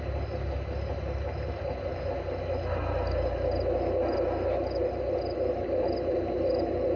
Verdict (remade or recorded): recorded